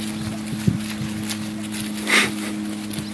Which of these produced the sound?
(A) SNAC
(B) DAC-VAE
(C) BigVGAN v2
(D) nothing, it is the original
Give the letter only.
D